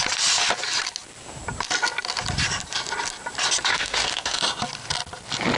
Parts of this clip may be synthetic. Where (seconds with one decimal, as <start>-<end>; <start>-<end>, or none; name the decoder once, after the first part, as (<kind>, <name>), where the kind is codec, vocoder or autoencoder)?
3.7-4.4 (autoencoder, DAC-VAE)